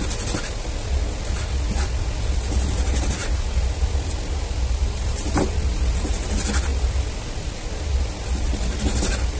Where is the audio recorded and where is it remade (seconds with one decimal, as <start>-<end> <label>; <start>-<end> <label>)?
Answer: 0.0-3.2 recorded; 3.2-6.3 remade; 6.3-6.7 recorded; 6.7-7.4 remade; 7.4-9.4 recorded